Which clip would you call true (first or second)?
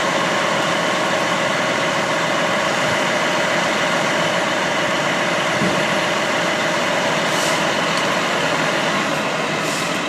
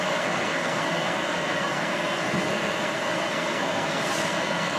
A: first